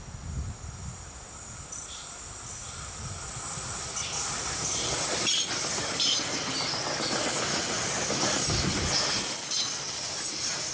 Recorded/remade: recorded